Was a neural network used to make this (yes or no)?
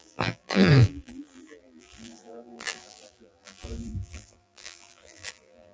yes